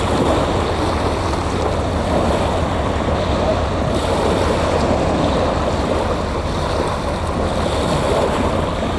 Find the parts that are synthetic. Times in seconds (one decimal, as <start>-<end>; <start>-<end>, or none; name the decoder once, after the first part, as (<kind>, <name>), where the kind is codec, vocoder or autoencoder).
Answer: none